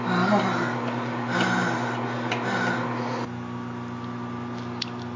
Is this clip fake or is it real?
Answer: real